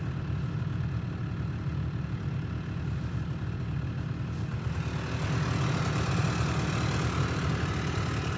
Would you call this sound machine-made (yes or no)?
no